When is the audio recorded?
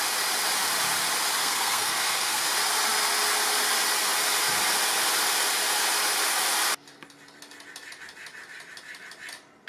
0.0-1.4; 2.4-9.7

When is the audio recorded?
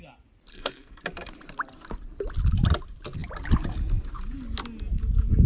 0.0-0.5; 1.0-5.5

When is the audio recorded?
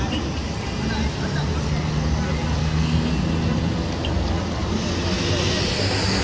0.0-2.6; 3.1-6.2